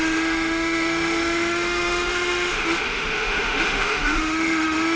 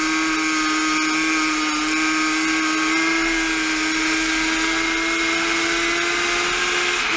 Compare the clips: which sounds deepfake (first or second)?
first